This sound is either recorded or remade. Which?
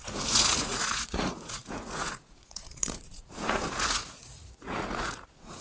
remade